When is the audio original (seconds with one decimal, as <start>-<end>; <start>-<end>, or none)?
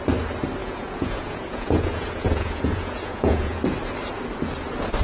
0.0-0.6; 3.6-5.0